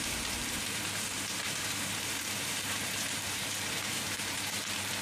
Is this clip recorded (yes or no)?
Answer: no